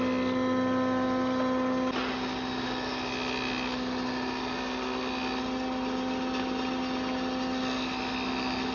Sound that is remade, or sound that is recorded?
recorded